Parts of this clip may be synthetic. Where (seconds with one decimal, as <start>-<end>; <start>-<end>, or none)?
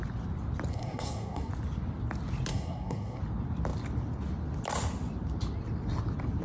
0.7-1.5; 2.5-3.2